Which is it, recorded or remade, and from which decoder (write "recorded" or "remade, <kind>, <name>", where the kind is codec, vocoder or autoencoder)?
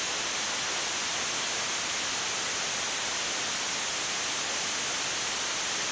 recorded